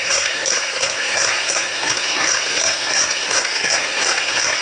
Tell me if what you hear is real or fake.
fake